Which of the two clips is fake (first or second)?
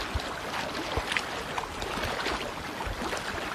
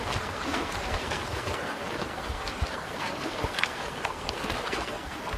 second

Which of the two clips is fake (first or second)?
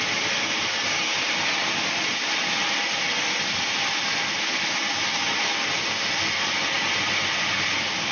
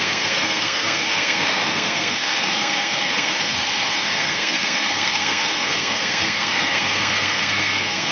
second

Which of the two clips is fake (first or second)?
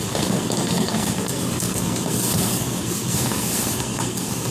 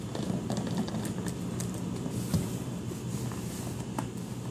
first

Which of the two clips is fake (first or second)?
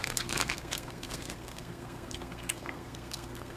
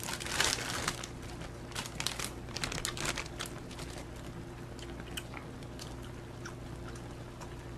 first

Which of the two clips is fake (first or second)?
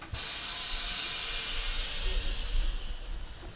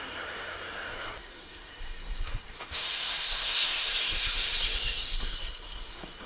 second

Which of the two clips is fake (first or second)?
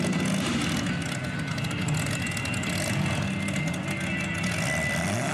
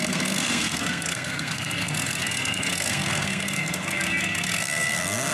second